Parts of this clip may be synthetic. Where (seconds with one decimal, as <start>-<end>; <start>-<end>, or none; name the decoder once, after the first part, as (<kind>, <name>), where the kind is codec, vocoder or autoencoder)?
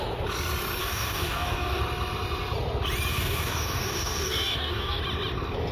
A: 0.8-1.8 (codec, DAC); 3.1-5.0